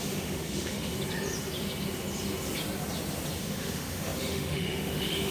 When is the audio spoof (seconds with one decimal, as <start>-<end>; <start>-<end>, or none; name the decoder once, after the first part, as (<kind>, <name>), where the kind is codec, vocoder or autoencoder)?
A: 0.0-0.9 (autoencoder, DAC-VAE); 3.4-5.3